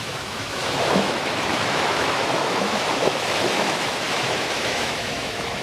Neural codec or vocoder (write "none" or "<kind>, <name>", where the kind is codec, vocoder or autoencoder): autoencoder, DAC-VAE